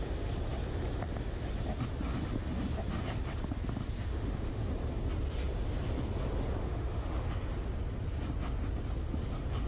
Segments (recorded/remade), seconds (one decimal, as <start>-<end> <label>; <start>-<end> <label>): 0.0-4.1 recorded; 4.1-4.6 remade; 4.6-6.6 recorded; 6.6-7.3 remade; 7.3-9.7 recorded

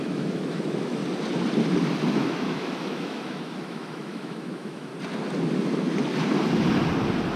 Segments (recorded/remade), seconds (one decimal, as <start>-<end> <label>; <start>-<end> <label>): 0.0-1.0 remade; 1.0-2.1 recorded; 2.1-4.9 remade; 4.9-7.4 recorded